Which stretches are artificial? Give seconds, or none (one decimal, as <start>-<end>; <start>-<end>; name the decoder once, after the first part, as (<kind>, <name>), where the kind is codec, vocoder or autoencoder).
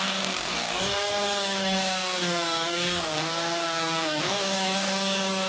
0.0-5.5 (codec, DAC)